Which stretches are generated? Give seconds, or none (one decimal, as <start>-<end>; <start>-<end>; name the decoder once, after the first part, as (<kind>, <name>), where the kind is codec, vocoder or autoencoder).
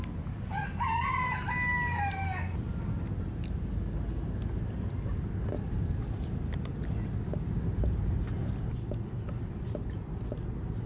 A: none